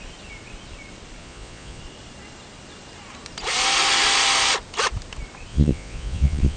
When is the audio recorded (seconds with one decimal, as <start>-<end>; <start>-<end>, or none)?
0.0-1.2; 1.8-5.5